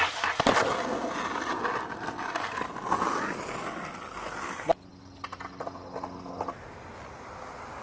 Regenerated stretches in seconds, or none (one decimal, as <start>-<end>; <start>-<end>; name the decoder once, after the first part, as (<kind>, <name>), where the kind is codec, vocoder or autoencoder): none